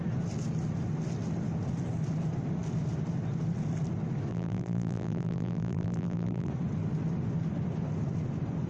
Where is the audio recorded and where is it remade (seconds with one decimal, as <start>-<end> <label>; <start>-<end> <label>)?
0.0-4.3 recorded; 4.3-6.5 remade; 6.5-8.7 recorded